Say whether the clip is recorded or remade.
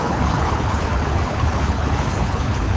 remade